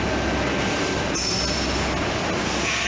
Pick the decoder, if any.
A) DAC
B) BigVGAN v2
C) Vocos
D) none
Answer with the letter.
D